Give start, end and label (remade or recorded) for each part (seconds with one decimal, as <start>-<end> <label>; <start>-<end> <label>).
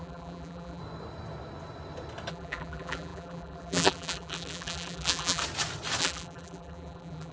0.0-0.8 remade; 0.8-2.3 recorded; 2.3-5.4 remade; 5.4-6.0 recorded; 6.0-7.3 remade